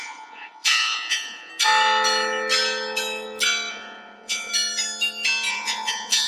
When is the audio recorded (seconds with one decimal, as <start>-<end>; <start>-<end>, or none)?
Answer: 1.5-3.7; 4.5-5.5